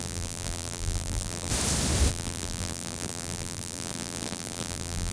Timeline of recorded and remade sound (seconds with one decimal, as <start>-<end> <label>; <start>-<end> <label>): 0.0-1.5 remade; 1.5-2.1 recorded; 2.1-5.1 remade